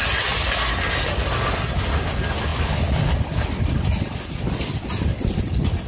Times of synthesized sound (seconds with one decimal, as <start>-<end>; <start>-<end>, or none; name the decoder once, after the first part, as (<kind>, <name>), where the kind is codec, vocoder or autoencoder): none